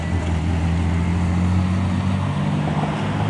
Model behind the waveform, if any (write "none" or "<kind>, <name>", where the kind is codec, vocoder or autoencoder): none